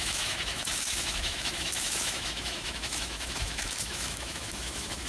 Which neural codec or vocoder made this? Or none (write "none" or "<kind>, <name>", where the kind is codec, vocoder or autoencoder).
autoencoder, DAC-VAE